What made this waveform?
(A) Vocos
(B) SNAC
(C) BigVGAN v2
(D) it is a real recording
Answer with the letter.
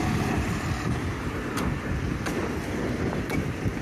D